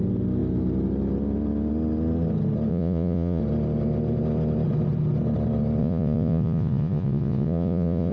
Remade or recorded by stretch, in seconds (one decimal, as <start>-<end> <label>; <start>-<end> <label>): 0.0-2.7 recorded; 2.7-3.4 remade; 3.4-5.8 recorded; 5.8-8.1 remade